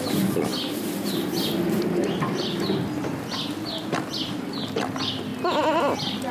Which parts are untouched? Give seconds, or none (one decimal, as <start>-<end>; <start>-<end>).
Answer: 0.5-4.2